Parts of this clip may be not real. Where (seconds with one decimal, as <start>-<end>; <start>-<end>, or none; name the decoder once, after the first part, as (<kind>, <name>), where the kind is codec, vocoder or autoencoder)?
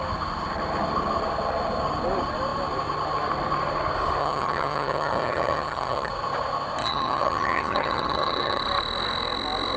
4.2-6.1 (vocoder, HiFi-GAN); 6.8-8.6